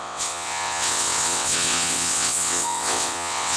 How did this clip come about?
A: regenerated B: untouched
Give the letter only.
A